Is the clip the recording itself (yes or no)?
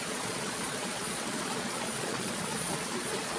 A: no